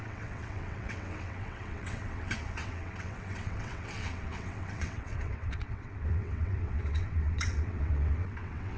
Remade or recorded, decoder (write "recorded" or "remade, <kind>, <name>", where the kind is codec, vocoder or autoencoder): remade, vocoder, WaveNeXt